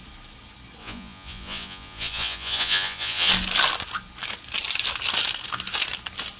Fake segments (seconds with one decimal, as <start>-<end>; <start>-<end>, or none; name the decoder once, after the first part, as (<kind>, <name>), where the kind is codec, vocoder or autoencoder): 0.8-3.3 (vocoder, Vocos)